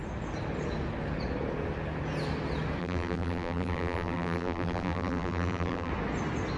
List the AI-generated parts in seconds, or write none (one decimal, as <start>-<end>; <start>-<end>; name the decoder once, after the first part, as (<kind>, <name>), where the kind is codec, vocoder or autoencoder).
2.8-5.9 (vocoder, BigVGAN v2)